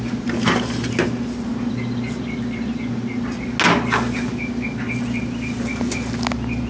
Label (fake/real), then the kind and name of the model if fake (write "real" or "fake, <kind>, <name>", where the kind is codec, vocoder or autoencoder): real